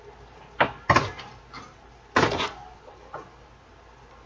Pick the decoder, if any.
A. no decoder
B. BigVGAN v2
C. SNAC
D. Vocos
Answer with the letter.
A